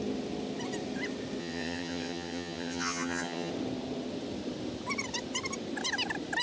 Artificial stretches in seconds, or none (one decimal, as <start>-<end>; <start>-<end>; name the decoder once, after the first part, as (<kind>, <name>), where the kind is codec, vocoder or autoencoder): 1.4-3.5 (vocoder, HiFi-GAN)